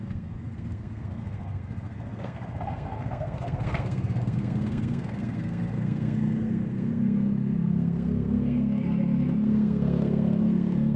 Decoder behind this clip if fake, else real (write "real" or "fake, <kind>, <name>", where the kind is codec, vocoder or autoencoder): fake, codec, SNAC